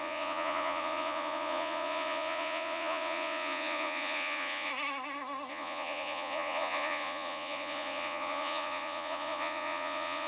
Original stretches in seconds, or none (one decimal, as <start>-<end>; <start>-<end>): 4.7-5.5